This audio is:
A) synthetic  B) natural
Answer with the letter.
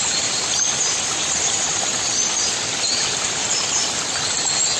B